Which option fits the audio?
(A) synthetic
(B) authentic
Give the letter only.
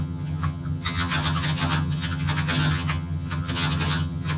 A